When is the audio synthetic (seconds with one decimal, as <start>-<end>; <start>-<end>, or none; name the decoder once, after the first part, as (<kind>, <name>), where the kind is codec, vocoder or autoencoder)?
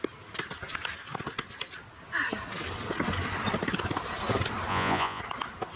4.7-5.2 (vocoder, Vocos)